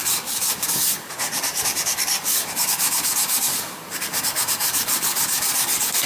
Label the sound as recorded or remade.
remade